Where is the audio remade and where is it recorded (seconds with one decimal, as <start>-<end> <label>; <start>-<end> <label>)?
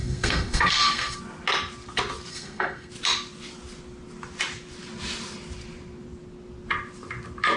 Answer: 0.0-1.2 remade; 1.2-2.3 recorded; 2.3-2.9 remade; 2.9-7.6 recorded